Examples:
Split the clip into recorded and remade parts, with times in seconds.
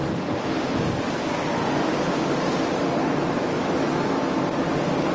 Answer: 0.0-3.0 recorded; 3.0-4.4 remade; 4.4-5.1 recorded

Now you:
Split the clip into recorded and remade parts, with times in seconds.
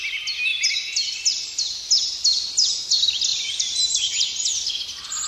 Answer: 0.0-3.3 recorded; 3.3-4.7 remade; 4.7-5.3 recorded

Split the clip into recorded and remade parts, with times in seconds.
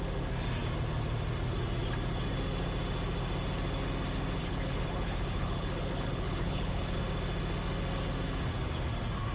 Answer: 0.0-4.4 recorded; 4.4-7.0 remade; 7.0-9.3 recorded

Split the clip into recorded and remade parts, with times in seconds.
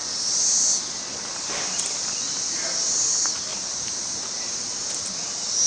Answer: 0.0-3.5 recorded; 3.5-4.7 remade; 4.7-5.7 recorded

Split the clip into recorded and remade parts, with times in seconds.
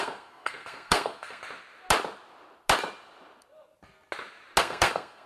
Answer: 0.0-1.4 remade; 1.4-4.6 recorded; 4.6-5.3 remade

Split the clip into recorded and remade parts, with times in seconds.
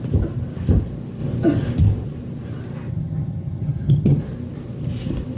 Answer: 0.0-2.9 recorded; 2.9-4.2 remade; 4.2-5.4 recorded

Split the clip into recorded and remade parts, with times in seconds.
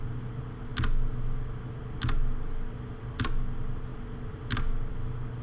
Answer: 0.0-5.4 recorded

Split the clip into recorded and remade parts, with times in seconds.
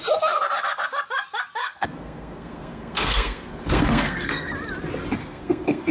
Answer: 0.0-1.6 recorded; 1.6-4.5 remade; 4.5-5.2 recorded; 5.2-5.9 remade